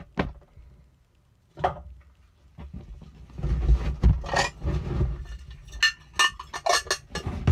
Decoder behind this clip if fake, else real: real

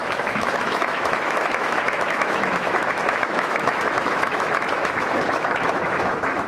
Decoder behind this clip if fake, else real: fake, autoencoder, DAC-VAE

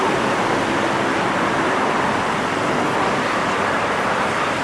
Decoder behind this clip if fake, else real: real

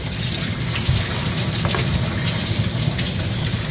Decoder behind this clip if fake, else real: real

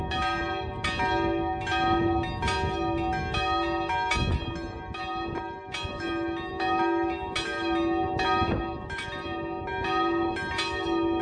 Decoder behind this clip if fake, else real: real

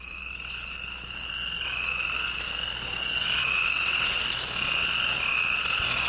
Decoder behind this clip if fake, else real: real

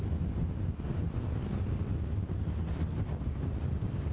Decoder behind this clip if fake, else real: real